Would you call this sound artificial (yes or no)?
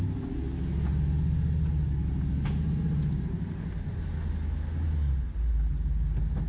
no